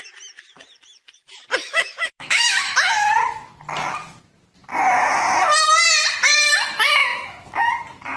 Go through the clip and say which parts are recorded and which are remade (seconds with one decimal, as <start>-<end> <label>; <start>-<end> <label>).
0.0-1.6 recorded; 1.6-3.1 remade; 3.1-7.0 recorded; 7.0-7.6 remade; 7.6-8.2 recorded